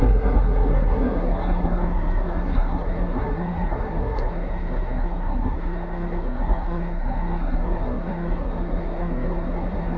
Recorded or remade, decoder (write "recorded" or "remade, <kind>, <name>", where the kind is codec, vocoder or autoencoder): remade, codec, SNAC